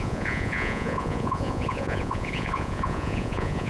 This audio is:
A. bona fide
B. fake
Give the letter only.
B